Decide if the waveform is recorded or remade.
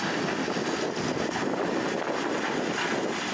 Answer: recorded